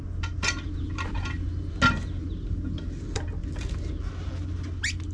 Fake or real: real